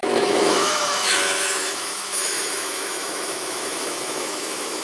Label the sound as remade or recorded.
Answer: remade